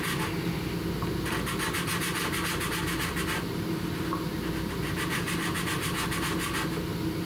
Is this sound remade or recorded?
recorded